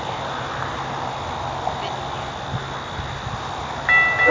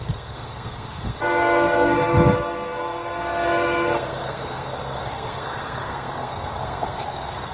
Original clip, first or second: first